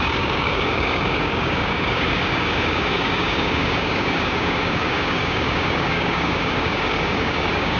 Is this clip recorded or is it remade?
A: remade